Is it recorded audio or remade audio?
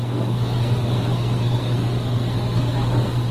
remade